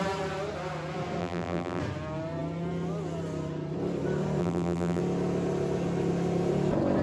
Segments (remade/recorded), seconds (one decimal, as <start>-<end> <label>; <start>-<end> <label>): 0.0-1.2 recorded; 1.2-1.8 remade; 1.8-4.4 recorded; 4.4-5.0 remade; 5.0-7.0 recorded